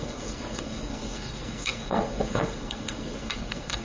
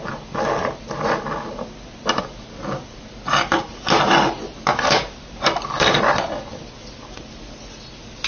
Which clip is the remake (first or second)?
first